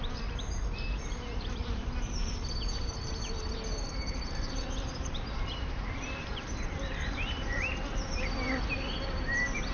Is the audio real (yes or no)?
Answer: no